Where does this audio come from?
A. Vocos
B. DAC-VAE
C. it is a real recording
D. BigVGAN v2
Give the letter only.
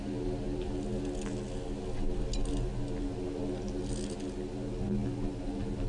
C